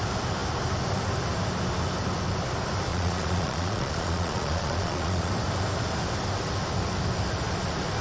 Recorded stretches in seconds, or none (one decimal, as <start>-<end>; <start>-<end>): 0.0-2.9; 5.3-8.0